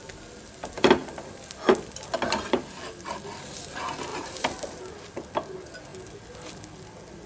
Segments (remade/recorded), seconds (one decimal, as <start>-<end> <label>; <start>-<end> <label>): 0.0-4.1 recorded; 4.1-4.8 remade; 4.8-7.3 recorded